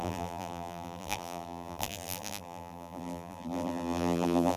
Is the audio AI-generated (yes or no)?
yes